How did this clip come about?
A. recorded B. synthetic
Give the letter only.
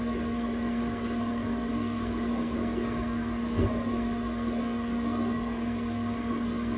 B